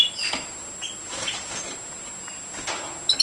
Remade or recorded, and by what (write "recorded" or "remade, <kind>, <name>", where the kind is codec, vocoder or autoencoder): recorded